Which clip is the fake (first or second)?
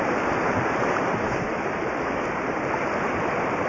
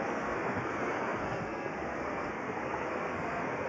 second